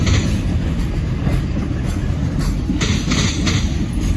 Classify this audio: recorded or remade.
recorded